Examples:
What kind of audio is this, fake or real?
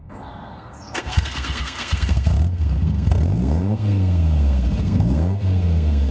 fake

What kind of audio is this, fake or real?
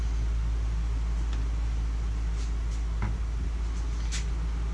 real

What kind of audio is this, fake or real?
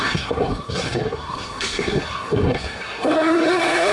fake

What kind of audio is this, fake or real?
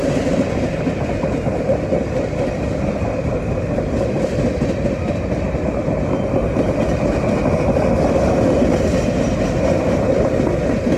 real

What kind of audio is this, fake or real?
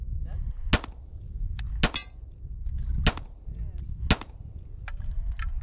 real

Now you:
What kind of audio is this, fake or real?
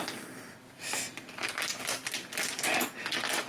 real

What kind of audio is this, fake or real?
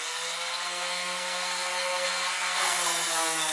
fake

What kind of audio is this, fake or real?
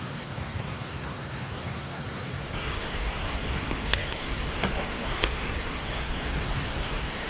fake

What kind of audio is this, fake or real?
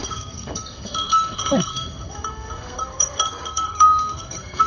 fake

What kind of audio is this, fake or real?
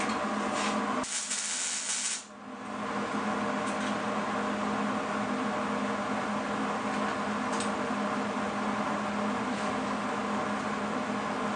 real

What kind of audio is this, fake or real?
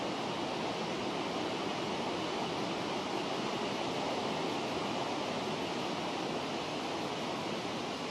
real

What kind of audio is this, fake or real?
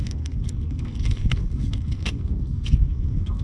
fake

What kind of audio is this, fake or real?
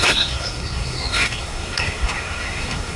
fake